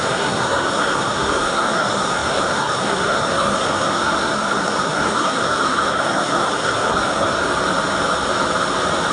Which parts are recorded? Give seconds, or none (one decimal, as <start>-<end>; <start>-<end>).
7.5-9.1